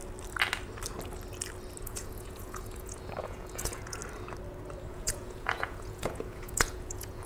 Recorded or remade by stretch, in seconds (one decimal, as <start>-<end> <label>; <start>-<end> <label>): 0.0-1.8 recorded; 1.8-4.0 remade; 4.0-4.9 recorded; 4.9-7.3 remade